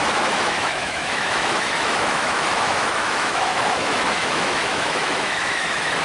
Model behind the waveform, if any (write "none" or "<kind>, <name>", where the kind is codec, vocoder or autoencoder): autoencoder, DAC-VAE